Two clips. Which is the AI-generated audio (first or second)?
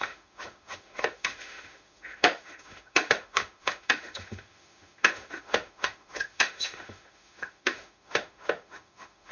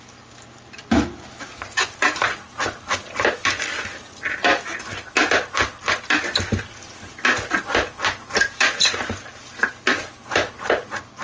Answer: first